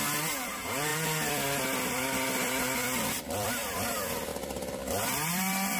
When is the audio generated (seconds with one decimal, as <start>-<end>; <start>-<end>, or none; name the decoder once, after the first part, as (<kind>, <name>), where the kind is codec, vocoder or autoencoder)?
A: 0.0-5.8 (vocoder, BigVGAN v2)